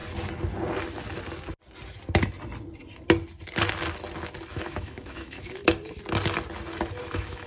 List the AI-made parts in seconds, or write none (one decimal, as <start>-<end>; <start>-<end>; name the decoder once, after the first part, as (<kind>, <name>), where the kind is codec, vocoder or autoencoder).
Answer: 4.5-5.6 (autoencoder, DAC-VAE); 7.0-7.5